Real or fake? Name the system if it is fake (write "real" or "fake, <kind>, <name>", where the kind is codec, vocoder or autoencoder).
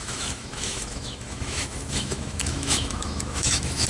fake, autoencoder, DAC-VAE